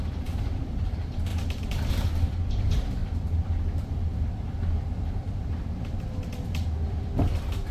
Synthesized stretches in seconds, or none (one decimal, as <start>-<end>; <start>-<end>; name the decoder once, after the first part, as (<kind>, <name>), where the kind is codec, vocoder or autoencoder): 0.0-3.0 (vocoder, BigVGAN v2); 6.9-7.7